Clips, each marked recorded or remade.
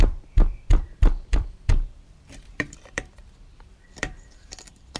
remade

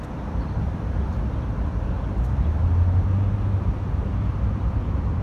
recorded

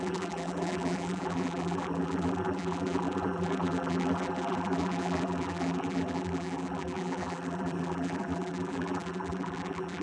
remade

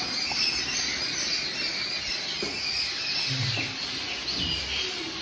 recorded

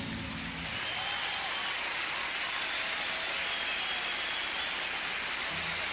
recorded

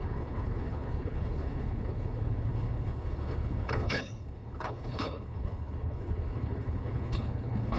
remade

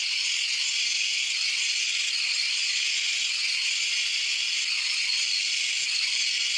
recorded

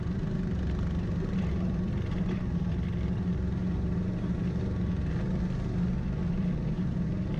recorded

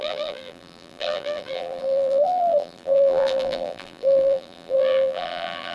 remade